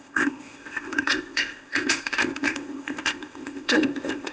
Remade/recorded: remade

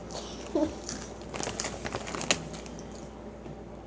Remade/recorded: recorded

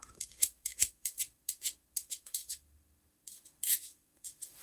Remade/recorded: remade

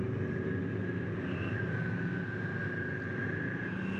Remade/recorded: recorded